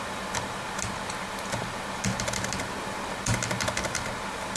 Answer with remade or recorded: recorded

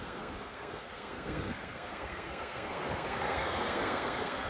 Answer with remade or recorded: remade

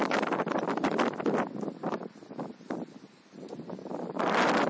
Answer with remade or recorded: recorded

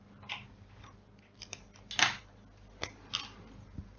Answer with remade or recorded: recorded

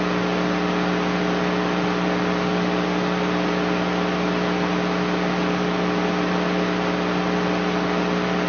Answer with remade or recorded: recorded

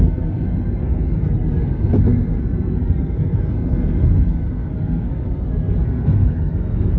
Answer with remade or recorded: remade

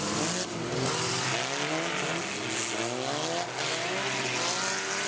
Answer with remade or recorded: recorded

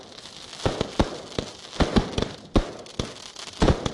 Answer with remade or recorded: recorded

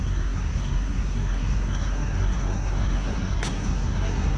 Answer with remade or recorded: remade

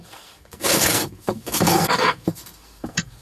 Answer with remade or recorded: remade